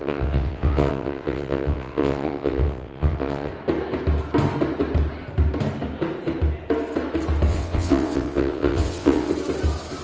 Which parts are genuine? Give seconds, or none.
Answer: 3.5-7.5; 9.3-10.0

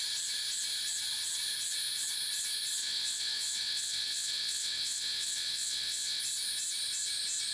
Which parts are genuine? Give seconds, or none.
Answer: 0.0-2.8; 6.2-7.5